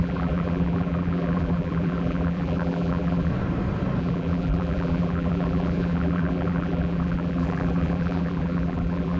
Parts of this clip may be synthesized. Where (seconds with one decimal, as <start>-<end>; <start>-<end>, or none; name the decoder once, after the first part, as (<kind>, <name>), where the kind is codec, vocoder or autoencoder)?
0.0-3.3 (vocoder, BigVGAN v2); 4.0-9.2